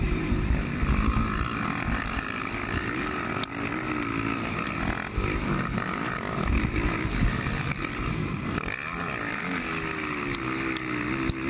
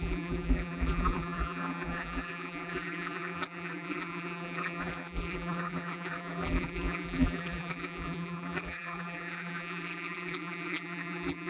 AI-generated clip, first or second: second